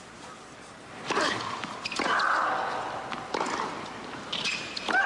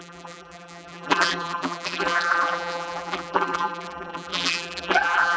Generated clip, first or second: second